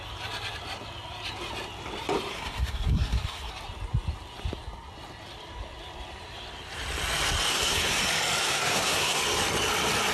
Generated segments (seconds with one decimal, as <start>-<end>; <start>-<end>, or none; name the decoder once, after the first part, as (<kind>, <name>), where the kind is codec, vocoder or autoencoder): 2.3-3.5 (codec, SNAC); 7.5-8.0; 8.4-9.2